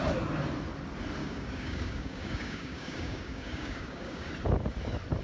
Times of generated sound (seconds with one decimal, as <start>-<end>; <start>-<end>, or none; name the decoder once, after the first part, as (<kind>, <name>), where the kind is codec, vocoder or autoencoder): 1.2-4.3 (codec, DAC)